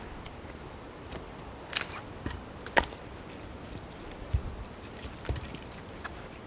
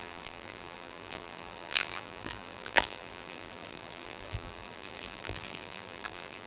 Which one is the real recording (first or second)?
first